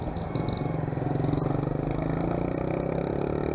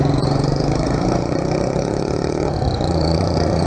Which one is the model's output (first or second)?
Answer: second